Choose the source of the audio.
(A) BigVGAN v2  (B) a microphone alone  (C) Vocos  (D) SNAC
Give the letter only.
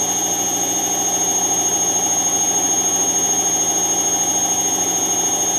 B